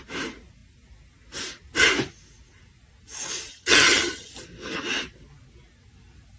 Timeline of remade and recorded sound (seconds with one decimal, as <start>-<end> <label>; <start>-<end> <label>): 0.0-3.5 recorded; 3.5-4.3 remade; 4.3-6.4 recorded